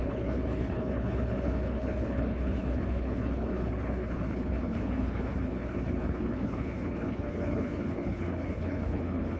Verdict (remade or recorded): remade